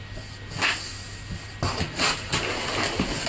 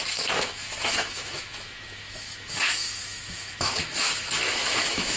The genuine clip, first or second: first